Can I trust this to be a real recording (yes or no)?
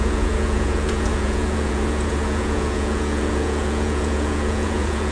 no